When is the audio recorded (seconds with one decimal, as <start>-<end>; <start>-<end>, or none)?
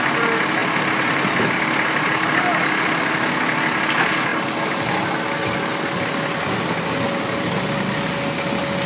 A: 0.0-8.9